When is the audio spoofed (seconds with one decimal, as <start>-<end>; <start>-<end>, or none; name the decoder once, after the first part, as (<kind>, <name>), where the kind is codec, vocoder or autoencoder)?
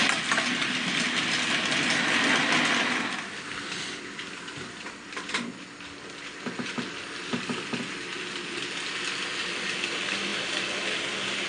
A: none